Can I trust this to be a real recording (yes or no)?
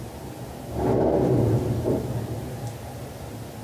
yes